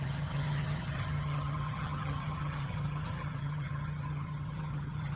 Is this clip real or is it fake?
fake